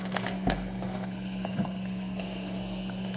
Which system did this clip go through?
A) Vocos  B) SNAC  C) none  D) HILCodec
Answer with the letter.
B